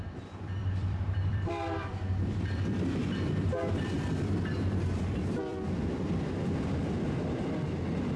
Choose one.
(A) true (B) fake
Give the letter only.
B